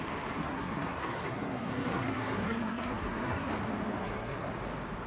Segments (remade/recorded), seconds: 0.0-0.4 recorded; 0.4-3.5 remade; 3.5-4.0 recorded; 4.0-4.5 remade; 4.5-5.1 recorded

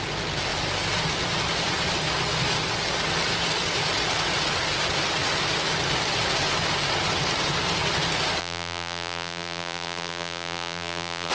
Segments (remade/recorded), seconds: 0.0-8.4 recorded; 8.4-11.3 remade

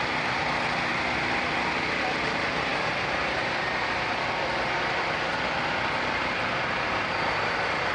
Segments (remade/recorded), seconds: 0.0-7.9 recorded

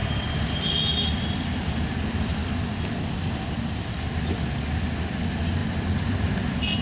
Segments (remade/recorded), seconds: 0.0-0.7 remade; 0.7-5.6 recorded; 5.6-6.3 remade; 6.3-6.8 recorded